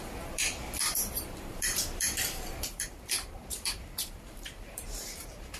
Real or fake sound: fake